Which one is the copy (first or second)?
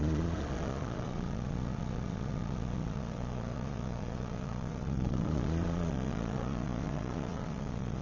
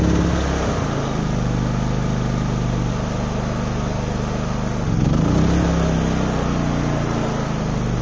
first